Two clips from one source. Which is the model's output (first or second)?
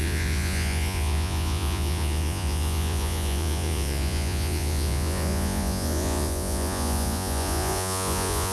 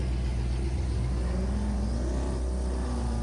first